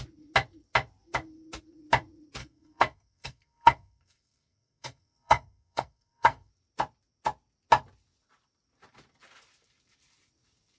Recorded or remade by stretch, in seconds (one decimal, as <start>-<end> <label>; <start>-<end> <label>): 0.0-2.4 recorded; 2.4-6.5 remade; 6.5-10.8 recorded

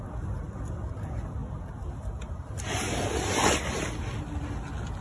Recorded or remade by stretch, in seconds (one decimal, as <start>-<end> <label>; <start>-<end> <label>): 0.0-5.0 recorded

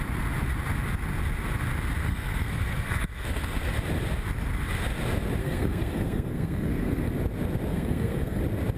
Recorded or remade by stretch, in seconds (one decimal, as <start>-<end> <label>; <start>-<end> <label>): 0.0-2.0 recorded; 2.0-3.7 remade; 3.7-5.4 recorded; 5.4-7.1 remade; 7.1-7.7 recorded; 7.7-8.4 remade; 8.4-8.8 recorded

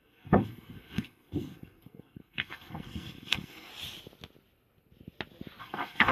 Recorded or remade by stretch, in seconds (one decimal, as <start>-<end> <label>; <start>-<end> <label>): 0.0-3.7 remade; 3.7-5.6 recorded; 5.6-6.1 remade

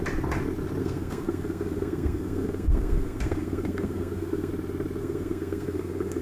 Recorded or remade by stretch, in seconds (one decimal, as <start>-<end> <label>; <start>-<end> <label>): 0.0-0.8 recorded; 0.8-4.5 remade; 4.5-5.0 recorded; 5.0-6.2 remade

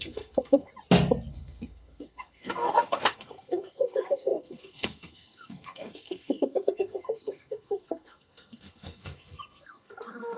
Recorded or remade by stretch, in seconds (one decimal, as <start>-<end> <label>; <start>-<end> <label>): 0.0-0.7 remade; 0.7-1.3 recorded; 1.3-10.4 remade

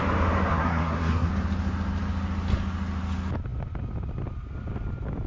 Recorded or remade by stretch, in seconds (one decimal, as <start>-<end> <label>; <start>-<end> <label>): 0.0-0.5 recorded; 0.5-1.3 remade; 1.3-5.3 recorded

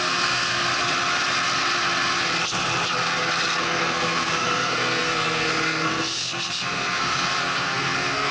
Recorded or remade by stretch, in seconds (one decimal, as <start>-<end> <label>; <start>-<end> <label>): 0.0-0.7 remade; 0.7-3.6 recorded; 3.6-8.3 remade